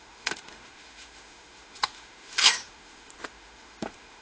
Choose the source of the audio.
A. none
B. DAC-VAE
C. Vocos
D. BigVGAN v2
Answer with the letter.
B